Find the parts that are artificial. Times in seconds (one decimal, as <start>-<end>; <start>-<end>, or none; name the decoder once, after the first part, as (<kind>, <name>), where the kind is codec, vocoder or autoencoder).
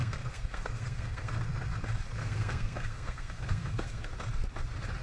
0.0-1.3 (codec, SNAC); 2.2-4.1